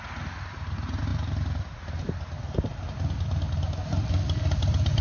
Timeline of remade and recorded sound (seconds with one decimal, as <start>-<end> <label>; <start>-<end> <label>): 0.0-5.0 recorded